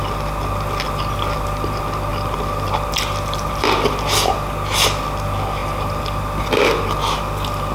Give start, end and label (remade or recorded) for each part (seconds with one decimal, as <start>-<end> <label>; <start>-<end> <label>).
0.0-2.1 recorded; 2.1-3.5 remade; 3.5-7.7 recorded